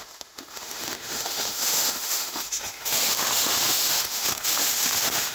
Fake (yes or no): yes